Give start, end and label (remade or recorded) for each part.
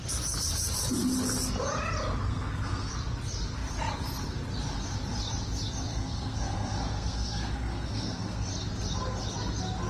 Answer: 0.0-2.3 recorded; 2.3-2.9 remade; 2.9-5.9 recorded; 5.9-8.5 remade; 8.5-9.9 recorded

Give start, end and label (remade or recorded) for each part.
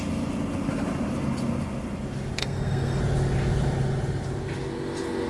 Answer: 0.0-2.4 recorded; 2.4-3.0 remade; 3.0-5.3 recorded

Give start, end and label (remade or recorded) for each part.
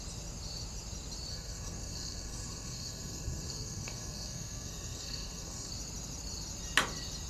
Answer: 0.0-1.3 recorded; 1.3-5.7 remade; 5.7-7.3 recorded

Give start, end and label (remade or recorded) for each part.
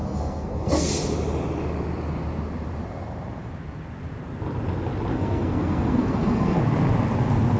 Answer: 0.0-0.9 remade; 0.9-5.1 recorded; 5.1-6.6 remade; 6.6-7.6 recorded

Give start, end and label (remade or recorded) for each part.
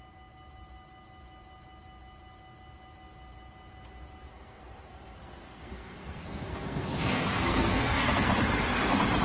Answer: 0.0-4.3 recorded; 4.3-8.3 remade; 8.3-9.2 recorded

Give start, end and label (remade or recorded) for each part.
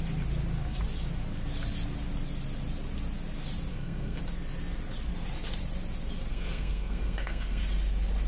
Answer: 0.0-3.7 recorded; 3.7-4.2 remade; 4.2-6.3 recorded; 6.3-7.6 remade; 7.6-8.3 recorded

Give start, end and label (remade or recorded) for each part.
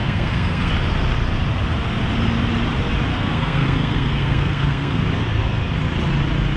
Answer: 0.0-0.7 remade; 0.7-3.1 recorded; 3.1-5.0 remade; 5.0-6.6 recorded